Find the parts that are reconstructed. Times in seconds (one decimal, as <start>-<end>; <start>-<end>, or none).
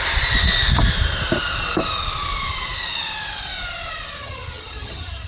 4.2-5.3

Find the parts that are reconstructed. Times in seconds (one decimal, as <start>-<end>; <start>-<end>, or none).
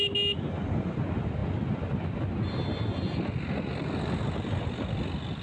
none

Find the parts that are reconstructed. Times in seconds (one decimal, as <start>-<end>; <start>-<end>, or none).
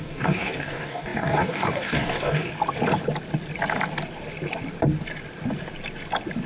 0.0-2.5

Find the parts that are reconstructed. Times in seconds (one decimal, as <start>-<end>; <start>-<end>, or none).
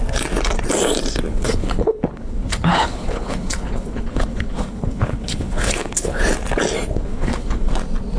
1.3-6.2; 6.9-7.7